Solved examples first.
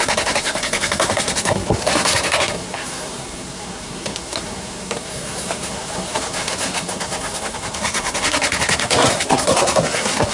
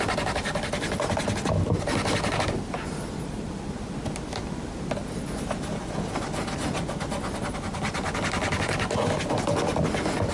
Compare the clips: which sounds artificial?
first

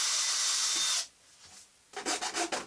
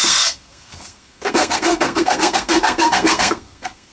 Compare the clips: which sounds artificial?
second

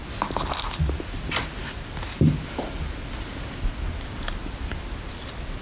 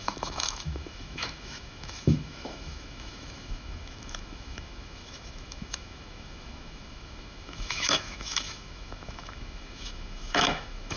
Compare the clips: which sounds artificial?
second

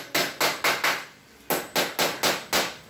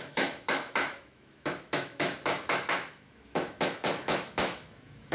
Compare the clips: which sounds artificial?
second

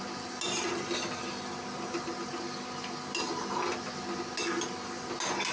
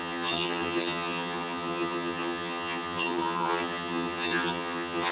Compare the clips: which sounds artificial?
second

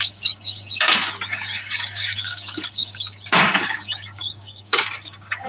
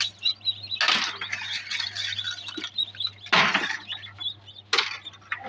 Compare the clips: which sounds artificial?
first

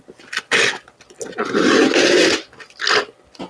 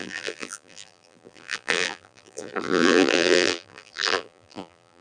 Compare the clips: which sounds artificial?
second